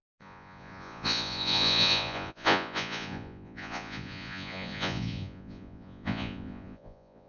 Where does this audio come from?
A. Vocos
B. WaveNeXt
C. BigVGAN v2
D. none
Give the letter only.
A